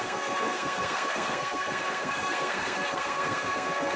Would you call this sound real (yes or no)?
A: no